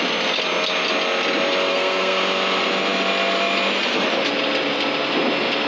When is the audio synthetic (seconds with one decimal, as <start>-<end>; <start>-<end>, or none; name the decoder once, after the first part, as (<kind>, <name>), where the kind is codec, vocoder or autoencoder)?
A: 1.7-2.2 (codec, SNAC)